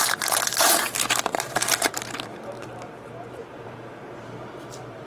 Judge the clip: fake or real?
fake